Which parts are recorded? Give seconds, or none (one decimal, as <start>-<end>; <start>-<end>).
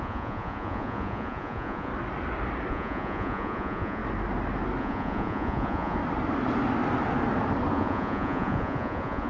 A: 1.9-2.7; 4.0-4.8; 6.0-7.7